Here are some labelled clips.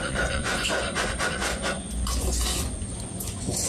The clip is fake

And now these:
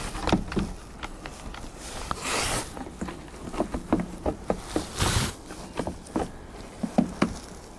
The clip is real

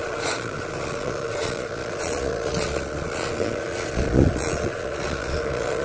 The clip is fake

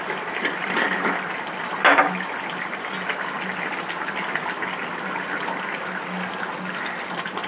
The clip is real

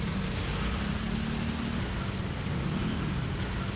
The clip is real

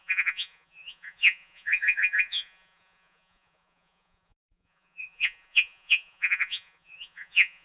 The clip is fake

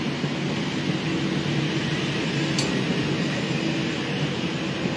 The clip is real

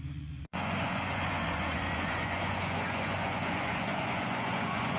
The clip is fake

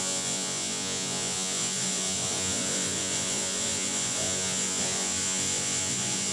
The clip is fake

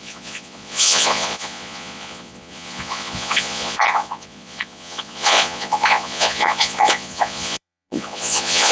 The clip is fake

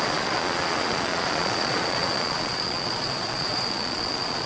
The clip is fake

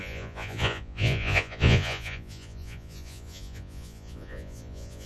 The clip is fake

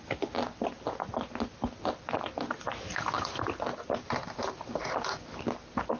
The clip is real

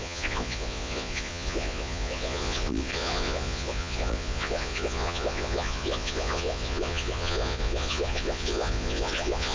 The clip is fake